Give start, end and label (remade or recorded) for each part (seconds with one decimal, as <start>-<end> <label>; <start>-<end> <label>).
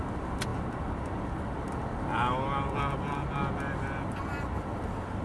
0.0-5.2 recorded